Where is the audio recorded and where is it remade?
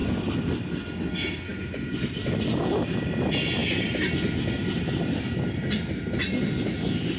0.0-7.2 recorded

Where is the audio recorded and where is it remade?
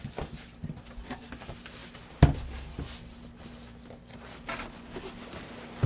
0.0-5.9 recorded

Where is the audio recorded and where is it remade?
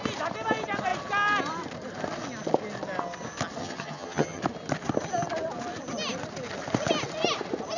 0.0-3.6 recorded; 3.6-4.4 remade; 4.4-7.8 recorded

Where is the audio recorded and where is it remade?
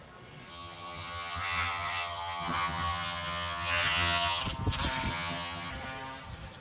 0.0-0.5 recorded; 0.5-4.4 remade; 4.4-5.1 recorded; 5.1-5.7 remade; 5.7-6.6 recorded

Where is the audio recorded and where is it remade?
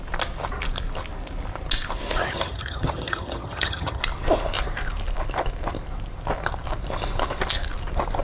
0.0-2.2 recorded; 2.2-4.0 remade; 4.0-8.2 recorded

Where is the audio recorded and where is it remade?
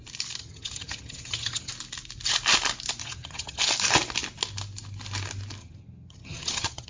0.0-0.4 recorded; 0.4-1.7 remade; 1.7-3.0 recorded; 3.0-3.6 remade; 3.6-5.6 recorded; 5.6-6.9 remade